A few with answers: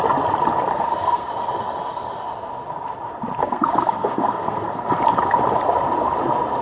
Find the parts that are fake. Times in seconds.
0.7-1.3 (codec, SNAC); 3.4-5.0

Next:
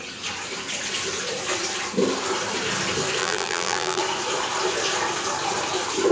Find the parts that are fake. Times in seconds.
3.2-4.0 (vocoder, BigVGAN v2)

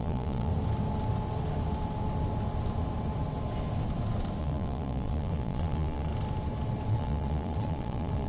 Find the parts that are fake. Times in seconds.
0.0-0.5 (vocoder, Vocos); 4.4-6.1; 6.9-8.3

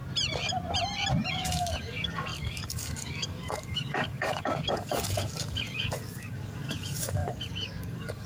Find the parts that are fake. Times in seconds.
1.3-8.3 (codec, DAC)

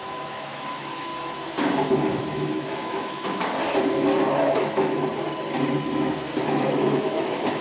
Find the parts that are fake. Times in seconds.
0.0-1.1 (autoencoder, DAC-VAE); 2.2-3.6; 4.3-5.1; 6.4-7.6

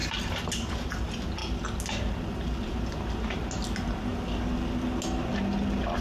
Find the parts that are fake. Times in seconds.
none

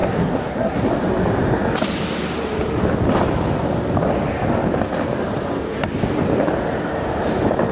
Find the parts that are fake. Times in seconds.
0.0-0.9 (codec, SNAC)